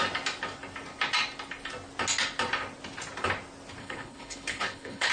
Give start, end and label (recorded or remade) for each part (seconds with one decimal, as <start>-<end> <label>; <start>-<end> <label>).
0.0-3.8 recorded; 3.8-5.1 remade